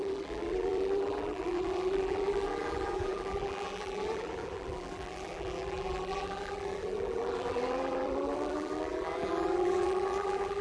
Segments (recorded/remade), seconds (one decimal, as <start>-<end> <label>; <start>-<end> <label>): 0.0-10.6 remade